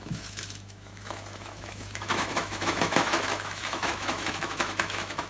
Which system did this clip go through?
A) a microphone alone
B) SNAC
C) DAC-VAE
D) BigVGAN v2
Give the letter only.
C